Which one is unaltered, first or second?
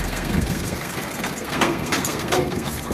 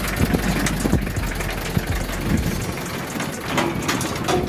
second